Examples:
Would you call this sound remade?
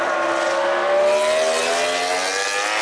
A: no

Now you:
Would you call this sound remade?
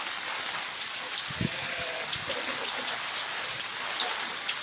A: no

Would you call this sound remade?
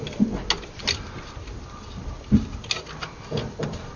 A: no